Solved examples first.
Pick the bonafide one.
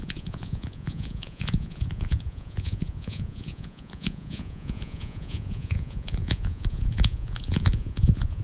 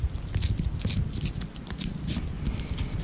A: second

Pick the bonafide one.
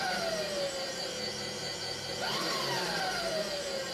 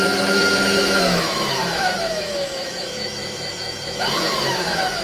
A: first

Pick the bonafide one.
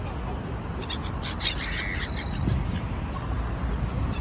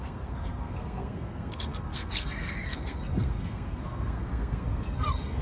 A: first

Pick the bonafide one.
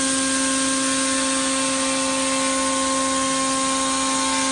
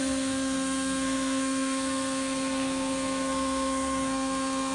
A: first